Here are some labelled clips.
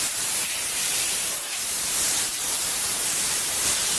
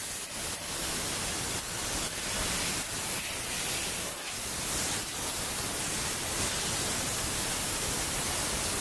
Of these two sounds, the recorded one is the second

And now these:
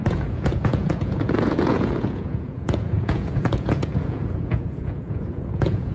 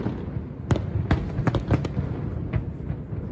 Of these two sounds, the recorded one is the second